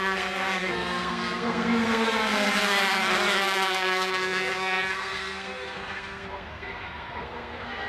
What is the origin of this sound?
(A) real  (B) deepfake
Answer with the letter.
B